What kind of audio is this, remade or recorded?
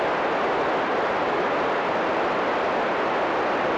recorded